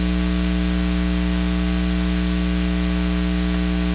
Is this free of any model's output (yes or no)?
yes